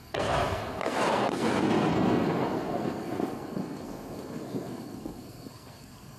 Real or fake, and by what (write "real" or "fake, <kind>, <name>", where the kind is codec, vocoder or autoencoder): fake, codec, SNAC